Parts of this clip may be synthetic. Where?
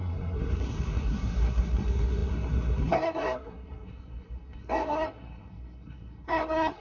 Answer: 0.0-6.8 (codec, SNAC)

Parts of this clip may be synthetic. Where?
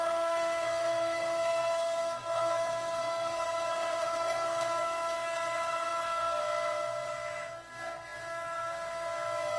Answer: 0.0-9.6 (codec, SNAC)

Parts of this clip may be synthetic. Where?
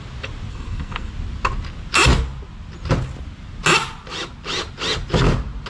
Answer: 0.5-1.1 (codec, SNAC)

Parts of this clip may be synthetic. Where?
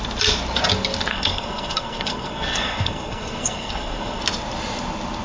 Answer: 1.1-4.2 (codec, SNAC)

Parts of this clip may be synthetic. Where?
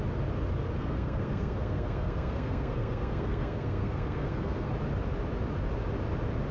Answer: 0.8-4.7 (codec, SNAC)